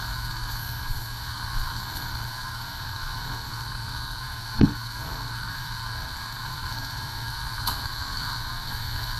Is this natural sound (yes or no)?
no